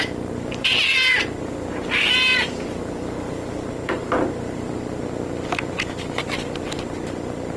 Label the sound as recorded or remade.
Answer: recorded